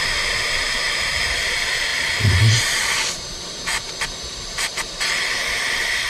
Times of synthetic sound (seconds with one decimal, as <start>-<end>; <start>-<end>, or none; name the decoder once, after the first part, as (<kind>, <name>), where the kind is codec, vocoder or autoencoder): 0.0-6.1 (vocoder, BigVGAN v2)